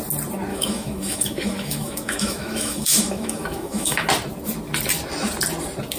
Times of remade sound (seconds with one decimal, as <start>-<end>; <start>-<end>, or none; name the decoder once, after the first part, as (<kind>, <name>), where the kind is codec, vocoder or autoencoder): 0.5-4.1 (autoencoder, DAC-VAE)